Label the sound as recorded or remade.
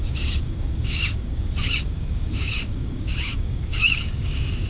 remade